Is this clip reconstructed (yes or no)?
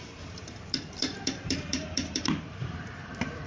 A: yes